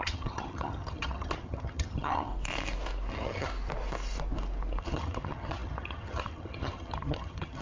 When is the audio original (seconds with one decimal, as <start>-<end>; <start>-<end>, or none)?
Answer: 2.3-3.1; 3.5-4.8